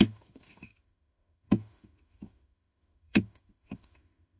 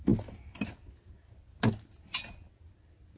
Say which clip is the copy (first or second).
first